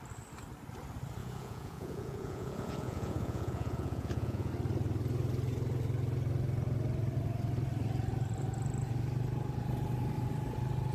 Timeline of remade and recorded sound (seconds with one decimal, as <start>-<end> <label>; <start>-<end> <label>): 0.0-1.2 recorded; 1.2-4.5 remade; 4.5-10.9 recorded